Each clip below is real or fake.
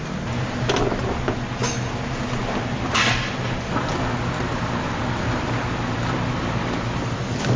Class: real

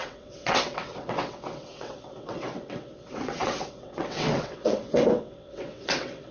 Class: fake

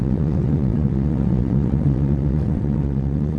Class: fake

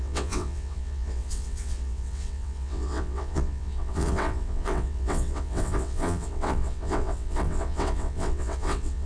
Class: fake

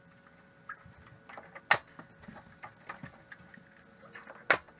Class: real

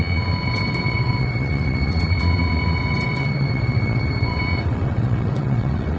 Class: fake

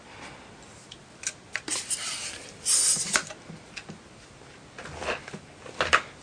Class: real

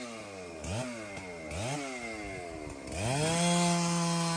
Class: real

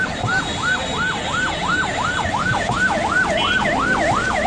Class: real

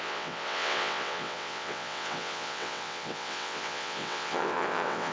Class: fake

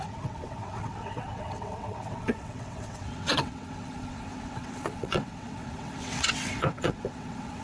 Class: fake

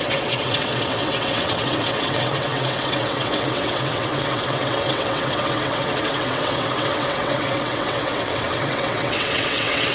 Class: fake